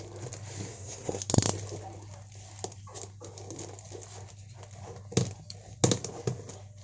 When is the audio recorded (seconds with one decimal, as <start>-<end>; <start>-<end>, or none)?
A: 0.0-0.7; 1.2-6.8